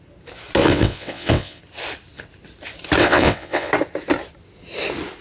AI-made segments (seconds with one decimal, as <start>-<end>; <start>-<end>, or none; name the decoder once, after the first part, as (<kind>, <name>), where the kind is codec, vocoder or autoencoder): 0.6-1.6 (vocoder, WaveNeXt); 3.0-3.7